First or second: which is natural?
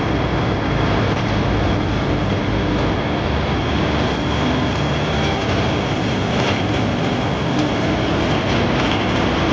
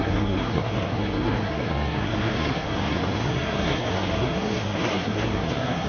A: first